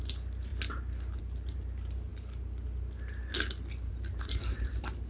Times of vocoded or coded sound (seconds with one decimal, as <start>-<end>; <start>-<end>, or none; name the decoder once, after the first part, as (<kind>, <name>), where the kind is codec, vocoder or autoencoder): 0.0-0.5 (vocoder, BigVGAN v2); 1.2-2.1; 3.9-5.1